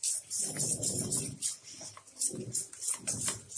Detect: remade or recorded recorded